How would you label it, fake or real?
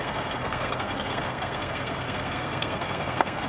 fake